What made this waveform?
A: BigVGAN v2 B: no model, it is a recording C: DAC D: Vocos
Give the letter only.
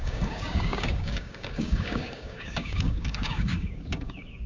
C